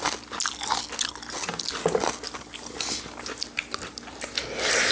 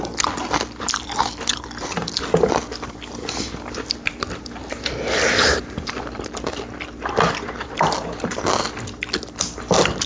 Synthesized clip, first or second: second